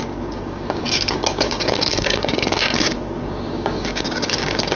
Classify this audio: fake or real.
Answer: fake